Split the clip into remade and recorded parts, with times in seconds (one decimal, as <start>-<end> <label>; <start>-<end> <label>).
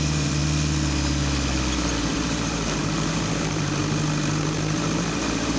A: 0.0-0.4 remade; 0.4-2.0 recorded; 2.0-3.8 remade; 3.8-4.4 recorded; 4.4-5.6 remade